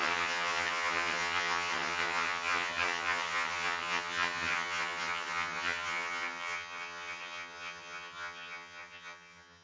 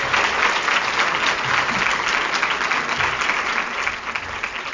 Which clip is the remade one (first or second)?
first